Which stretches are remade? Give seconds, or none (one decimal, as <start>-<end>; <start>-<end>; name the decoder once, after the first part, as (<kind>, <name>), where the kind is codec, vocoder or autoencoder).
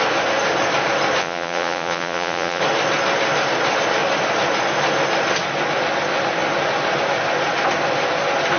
1.2-2.6 (vocoder, Vocos)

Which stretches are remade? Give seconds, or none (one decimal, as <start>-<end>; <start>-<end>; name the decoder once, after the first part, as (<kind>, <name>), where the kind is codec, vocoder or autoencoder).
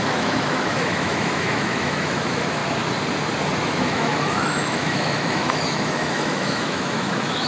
0.0-2.6 (autoencoder, DAC-VAE); 3.6-7.5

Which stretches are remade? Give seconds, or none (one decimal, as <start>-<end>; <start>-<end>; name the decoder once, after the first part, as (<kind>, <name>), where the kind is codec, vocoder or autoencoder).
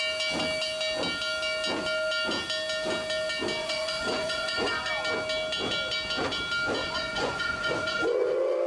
3.6-4.9 (vocoder, Vocos); 6.8-8.7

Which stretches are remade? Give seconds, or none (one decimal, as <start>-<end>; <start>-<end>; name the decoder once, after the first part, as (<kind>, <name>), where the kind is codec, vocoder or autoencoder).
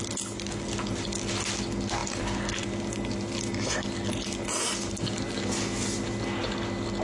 none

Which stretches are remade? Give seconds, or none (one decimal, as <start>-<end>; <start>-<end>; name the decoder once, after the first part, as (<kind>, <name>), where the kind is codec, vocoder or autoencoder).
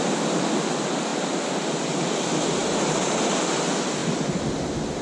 2.6-3.4 (vocoder, BigVGAN v2)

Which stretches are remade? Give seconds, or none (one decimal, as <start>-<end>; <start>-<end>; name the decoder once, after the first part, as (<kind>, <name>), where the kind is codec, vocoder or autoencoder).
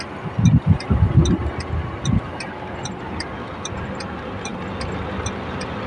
none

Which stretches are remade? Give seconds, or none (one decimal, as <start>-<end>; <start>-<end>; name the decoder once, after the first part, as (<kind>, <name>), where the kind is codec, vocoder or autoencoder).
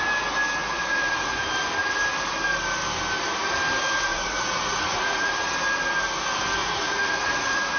0.6-1.5 (vocoder, Vocos); 4.1-5.3; 6.6-7.8